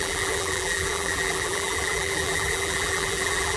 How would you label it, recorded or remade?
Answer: remade